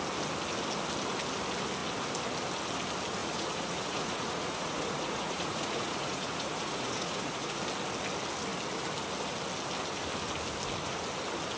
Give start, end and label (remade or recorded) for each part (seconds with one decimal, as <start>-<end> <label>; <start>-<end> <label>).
0.0-3.2 recorded; 3.2-7.6 remade; 7.6-11.6 recorded